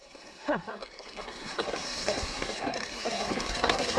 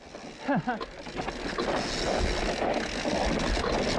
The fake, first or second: first